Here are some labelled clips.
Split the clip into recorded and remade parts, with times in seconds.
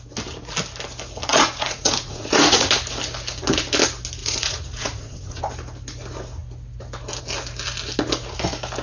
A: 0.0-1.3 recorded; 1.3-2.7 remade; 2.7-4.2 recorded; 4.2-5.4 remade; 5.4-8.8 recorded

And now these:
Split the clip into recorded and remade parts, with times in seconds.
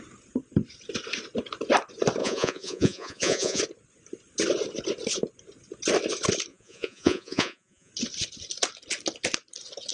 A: 0.0-2.2 recorded; 2.2-3.6 remade; 3.6-6.5 recorded; 6.5-7.9 remade; 7.9-9.9 recorded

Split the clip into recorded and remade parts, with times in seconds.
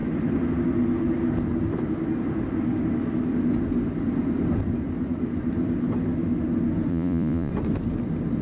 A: 0.0-6.9 recorded; 6.9-7.5 remade; 7.5-8.4 recorded